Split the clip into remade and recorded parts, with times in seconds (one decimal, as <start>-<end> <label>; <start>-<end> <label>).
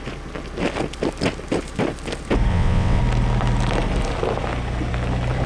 0.0-2.5 recorded; 2.5-3.0 remade; 3.0-5.5 recorded